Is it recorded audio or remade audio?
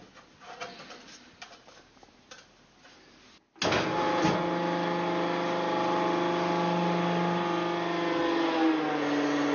recorded